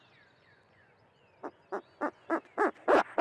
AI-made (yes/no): yes